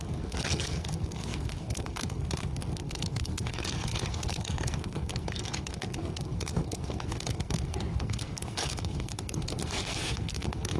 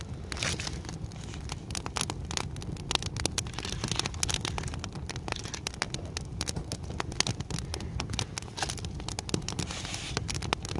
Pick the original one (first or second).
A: second